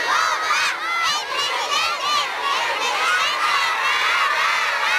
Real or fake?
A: real